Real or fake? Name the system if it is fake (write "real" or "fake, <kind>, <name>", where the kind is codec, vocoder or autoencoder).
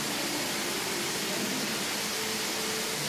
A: real